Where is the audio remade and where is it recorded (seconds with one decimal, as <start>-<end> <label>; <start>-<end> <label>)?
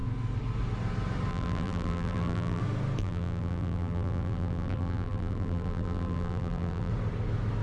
0.0-1.3 recorded; 1.3-2.6 remade; 2.6-3.0 recorded; 3.0-6.9 remade; 6.9-7.6 recorded